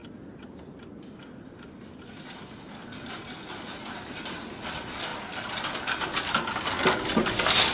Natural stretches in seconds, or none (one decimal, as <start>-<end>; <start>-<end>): 0.0-7.7